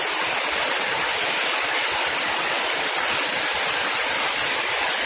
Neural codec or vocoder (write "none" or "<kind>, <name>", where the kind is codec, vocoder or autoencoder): none